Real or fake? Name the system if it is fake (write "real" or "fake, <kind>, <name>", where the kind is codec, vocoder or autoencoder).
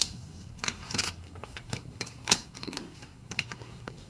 fake, codec, SNAC